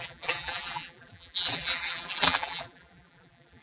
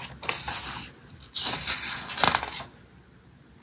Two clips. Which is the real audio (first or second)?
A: second